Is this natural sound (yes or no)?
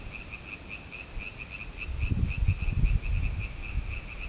yes